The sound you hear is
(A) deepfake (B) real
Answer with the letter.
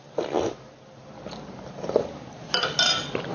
B